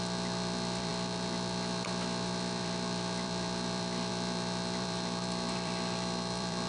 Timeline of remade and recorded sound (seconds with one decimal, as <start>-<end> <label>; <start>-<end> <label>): 0.0-6.7 remade